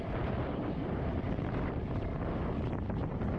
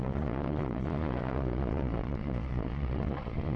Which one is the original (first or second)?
first